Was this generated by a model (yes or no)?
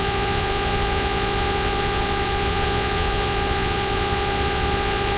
yes